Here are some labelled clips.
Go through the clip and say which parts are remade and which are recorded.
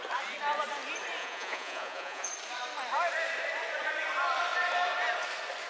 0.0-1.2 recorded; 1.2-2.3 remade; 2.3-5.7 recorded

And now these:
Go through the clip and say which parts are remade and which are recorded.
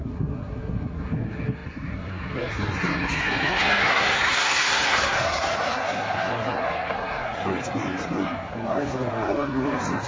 0.0-10.1 remade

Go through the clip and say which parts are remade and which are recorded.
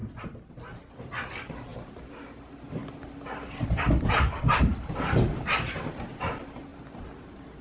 0.0-0.5 recorded; 0.5-6.7 remade; 6.7-7.6 recorded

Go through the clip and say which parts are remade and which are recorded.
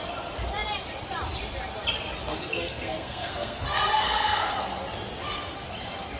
0.0-2.4 recorded; 2.4-4.5 remade; 4.5-6.2 recorded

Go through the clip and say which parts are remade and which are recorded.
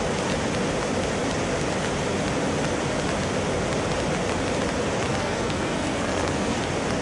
0.0-5.1 recorded; 5.1-6.6 remade; 6.6-7.0 recorded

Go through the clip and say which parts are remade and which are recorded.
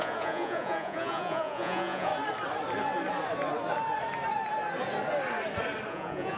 0.0-2.1 remade; 2.1-5.9 recorded; 5.9-6.4 remade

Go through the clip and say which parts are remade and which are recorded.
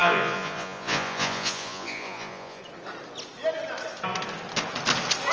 0.0-2.6 remade; 2.6-5.3 recorded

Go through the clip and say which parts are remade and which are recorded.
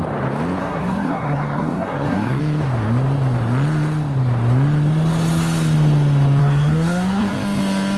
0.0-0.6 recorded; 0.6-2.4 remade; 2.4-6.4 recorded; 6.4-7.3 remade; 7.3-8.0 recorded